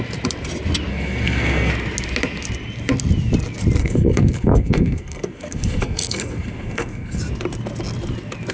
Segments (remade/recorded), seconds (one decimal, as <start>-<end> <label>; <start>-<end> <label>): 0.0-0.9 recorded; 0.9-1.7 remade; 1.7-3.8 recorded; 3.8-7.2 remade; 7.2-8.5 recorded

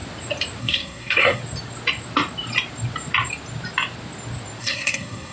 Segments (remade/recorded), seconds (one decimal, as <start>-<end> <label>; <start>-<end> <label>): 0.0-0.6 recorded; 0.6-1.4 remade; 1.4-4.6 recorded; 4.6-5.3 remade

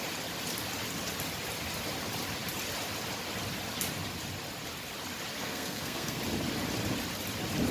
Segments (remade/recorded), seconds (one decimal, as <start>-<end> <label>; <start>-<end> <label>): 0.0-5.4 recorded; 5.4-6.2 remade; 6.2-7.7 recorded